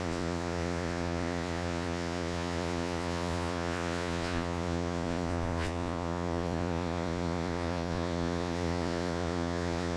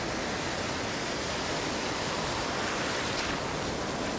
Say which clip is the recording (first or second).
second